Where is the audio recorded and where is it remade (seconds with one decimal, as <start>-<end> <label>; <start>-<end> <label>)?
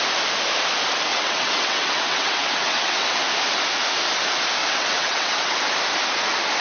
0.0-1.1 recorded; 1.1-3.2 remade; 3.2-4.6 recorded; 4.6-5.6 remade; 5.6-6.6 recorded